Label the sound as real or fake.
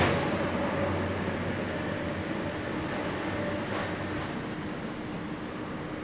real